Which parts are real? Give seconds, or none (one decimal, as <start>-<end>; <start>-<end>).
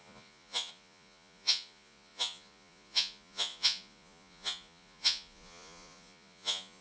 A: none